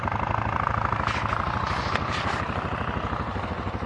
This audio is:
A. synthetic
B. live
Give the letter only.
B